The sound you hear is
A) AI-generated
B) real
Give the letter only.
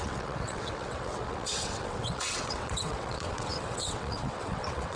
A